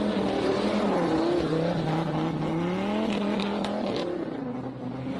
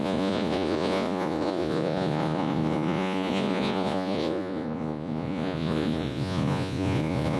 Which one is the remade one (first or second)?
second